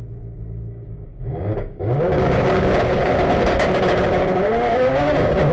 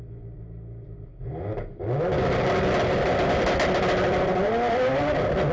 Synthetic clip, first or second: first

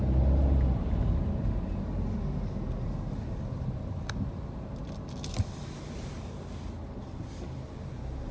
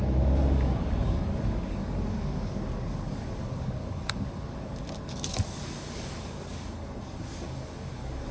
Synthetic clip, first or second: second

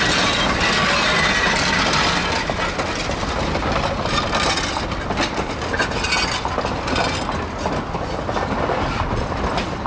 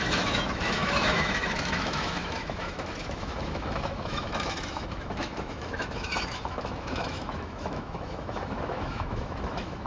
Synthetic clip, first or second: second